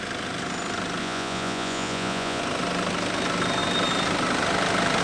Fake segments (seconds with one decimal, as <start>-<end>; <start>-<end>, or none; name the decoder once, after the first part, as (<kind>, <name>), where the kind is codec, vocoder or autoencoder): 1.0-2.4 (vocoder, Vocos)

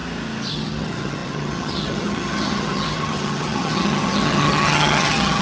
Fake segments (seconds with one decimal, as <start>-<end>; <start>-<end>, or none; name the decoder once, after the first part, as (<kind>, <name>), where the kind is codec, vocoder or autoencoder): 0.5-5.4 (vocoder, HiFi-GAN)

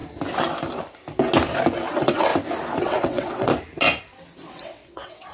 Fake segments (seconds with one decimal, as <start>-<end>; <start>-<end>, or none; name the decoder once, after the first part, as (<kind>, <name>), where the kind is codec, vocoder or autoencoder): 1.9-2.3 (vocoder, WaveNeXt); 2.8-3.5; 4.5-5.3

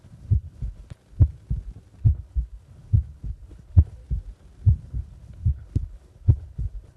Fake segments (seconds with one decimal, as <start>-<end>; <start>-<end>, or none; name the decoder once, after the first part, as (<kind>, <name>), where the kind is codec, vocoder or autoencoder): 0.0-1.0 (codec, HILCodec); 2.0-4.0; 4.8-7.0

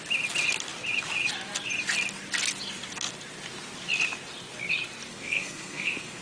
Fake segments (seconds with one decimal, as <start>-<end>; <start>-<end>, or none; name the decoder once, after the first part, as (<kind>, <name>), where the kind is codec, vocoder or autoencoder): 5.1-6.2 (codec, SNAC)

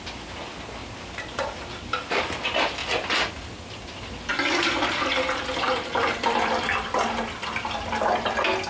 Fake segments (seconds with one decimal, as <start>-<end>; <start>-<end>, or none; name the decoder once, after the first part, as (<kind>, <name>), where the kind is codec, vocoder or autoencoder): 2.8-3.3 (vocoder, BigVGAN v2); 4.3-7.0

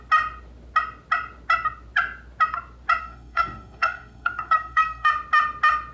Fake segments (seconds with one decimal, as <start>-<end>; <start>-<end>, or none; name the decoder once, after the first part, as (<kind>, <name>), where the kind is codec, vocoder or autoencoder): 3.0-5.1 (codec, SNAC)

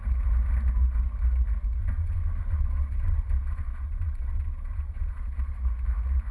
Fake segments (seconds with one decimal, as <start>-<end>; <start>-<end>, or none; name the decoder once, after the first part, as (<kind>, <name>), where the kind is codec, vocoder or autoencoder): 1.8-5.6 (vocoder, Vocos)